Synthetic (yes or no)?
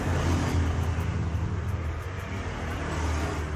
no